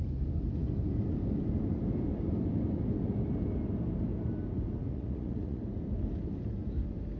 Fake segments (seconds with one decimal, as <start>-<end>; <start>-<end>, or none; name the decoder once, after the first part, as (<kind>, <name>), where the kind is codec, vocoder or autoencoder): 4.8-5.6 (vocoder, Vocos)